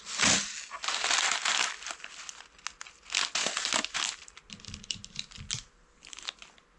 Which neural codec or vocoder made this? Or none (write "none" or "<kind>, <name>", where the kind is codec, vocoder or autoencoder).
none